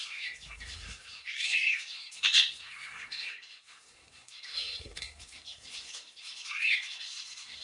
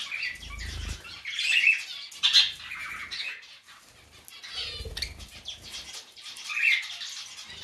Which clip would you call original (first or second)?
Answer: second